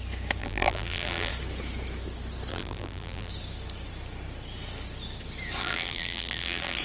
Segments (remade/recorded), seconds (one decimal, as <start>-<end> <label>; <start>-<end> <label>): 0.0-0.4 recorded; 0.4-1.3 remade; 1.3-2.5 recorded; 2.5-3.3 remade; 3.3-5.6 recorded; 5.6-6.8 remade